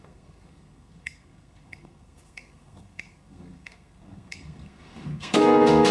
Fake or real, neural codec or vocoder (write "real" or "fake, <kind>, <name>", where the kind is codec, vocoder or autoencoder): fake, codec, SNAC